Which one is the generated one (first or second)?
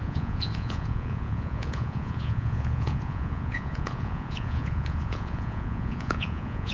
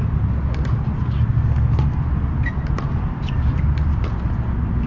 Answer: first